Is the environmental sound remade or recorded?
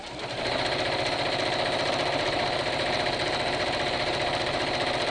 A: recorded